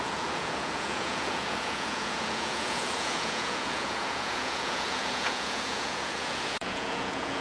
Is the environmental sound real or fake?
fake